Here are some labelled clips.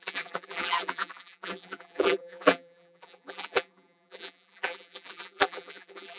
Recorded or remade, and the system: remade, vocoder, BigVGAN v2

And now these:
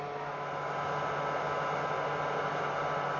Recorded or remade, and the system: recorded